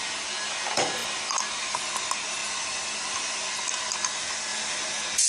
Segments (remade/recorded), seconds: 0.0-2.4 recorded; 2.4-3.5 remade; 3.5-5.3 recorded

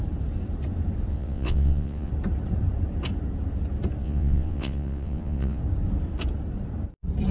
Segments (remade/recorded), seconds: 0.0-1.1 recorded; 1.1-2.1 remade; 2.1-4.0 recorded; 4.0-5.6 remade; 5.6-7.3 recorded